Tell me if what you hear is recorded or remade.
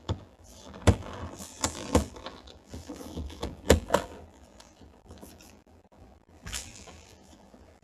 remade